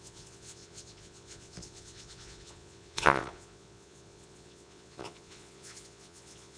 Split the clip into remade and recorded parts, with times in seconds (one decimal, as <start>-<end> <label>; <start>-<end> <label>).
0.0-6.6 remade